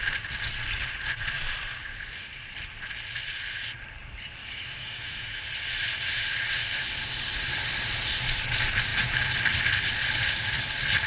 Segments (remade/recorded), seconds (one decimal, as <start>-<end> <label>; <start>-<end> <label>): 0.0-4.4 recorded; 4.4-5.4 remade; 5.4-11.1 recorded